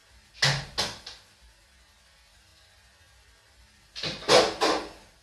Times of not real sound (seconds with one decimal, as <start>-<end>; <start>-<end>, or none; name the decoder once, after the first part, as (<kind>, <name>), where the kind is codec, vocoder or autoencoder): none